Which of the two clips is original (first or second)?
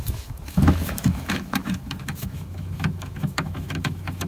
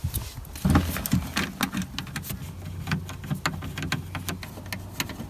second